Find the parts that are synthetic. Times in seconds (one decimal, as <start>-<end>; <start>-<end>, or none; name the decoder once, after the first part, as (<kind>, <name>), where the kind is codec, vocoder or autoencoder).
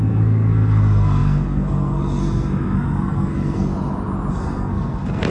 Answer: 0.0-3.7 (codec, SNAC); 4.3-5.3